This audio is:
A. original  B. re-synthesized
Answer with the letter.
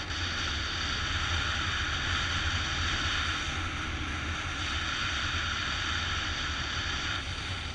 A